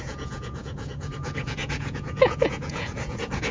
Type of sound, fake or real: fake